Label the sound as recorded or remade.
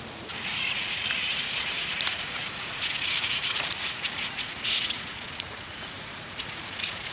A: remade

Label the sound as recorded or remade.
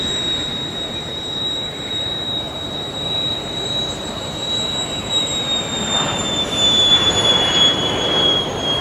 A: remade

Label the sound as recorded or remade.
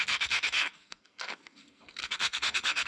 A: remade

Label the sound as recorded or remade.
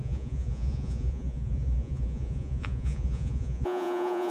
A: remade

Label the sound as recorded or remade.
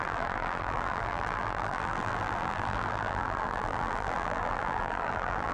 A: remade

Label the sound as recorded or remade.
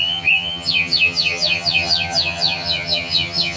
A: remade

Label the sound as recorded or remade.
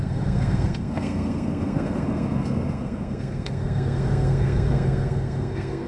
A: remade